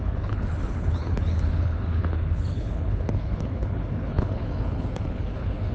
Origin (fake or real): fake